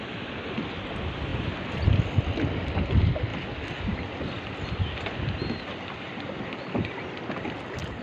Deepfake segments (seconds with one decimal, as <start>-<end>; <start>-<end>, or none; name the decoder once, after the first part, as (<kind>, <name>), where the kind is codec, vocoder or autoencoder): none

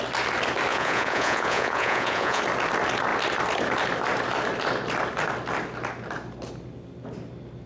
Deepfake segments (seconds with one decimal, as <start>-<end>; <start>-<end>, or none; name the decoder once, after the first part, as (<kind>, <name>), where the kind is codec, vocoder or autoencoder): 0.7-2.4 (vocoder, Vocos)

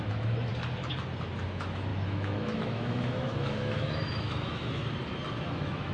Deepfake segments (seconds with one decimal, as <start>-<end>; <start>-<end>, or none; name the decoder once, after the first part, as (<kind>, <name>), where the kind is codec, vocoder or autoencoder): 0.0-0.5 (autoencoder, DAC-VAE); 1.5-4.8; 5.4-5.9